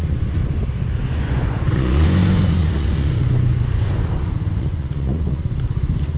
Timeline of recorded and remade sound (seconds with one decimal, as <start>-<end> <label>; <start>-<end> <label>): 0.0-0.4 remade; 0.4-1.0 recorded; 1.0-6.2 remade